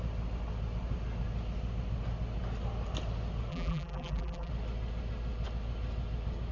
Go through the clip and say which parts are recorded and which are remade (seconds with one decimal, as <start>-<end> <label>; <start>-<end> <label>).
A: 0.0-3.5 recorded; 3.5-4.5 remade; 4.5-6.5 recorded